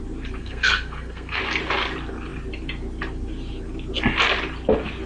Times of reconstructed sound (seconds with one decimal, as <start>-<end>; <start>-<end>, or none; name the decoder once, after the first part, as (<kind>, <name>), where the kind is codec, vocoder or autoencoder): 0.4-1.4 (codec, SNAC)